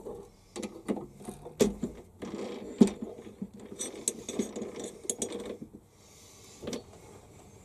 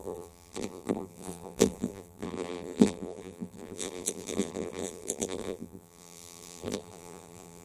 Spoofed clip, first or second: second